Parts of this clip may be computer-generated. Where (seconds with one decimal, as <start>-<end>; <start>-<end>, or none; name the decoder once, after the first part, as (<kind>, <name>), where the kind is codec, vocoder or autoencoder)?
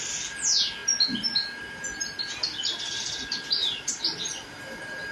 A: 3.6-5.1 (vocoder, BigVGAN v2)